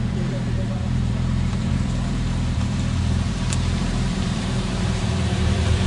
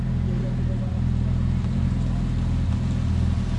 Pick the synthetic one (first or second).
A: first